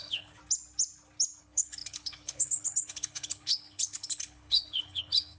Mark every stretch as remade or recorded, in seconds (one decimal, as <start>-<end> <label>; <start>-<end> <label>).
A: 0.0-0.4 remade; 0.4-1.4 recorded; 1.4-5.4 remade